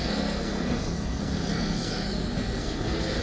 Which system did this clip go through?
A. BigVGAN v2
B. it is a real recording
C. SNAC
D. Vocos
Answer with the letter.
C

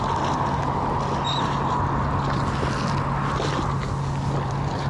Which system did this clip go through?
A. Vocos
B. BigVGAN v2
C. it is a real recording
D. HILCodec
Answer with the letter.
C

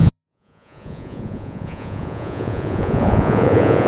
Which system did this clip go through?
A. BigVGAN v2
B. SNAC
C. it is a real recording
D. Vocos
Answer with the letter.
D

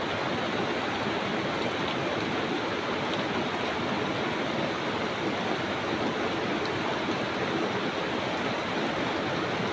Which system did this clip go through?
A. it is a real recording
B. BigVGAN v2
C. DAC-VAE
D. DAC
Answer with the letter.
A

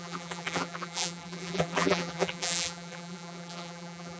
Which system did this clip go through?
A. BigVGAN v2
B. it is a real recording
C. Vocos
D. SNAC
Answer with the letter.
A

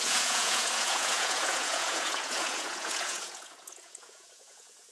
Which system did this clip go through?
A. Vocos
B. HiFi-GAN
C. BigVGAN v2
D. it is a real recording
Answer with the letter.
A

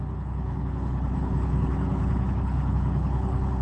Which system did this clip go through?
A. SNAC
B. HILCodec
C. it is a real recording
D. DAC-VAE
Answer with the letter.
B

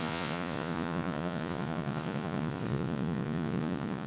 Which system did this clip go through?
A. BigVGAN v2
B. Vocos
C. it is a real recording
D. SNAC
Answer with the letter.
B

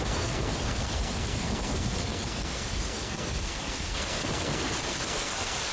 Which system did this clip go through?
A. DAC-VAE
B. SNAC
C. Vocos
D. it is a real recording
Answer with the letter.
B